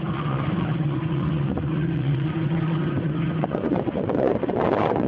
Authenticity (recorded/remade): remade